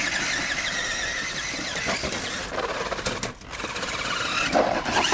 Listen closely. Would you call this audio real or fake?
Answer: real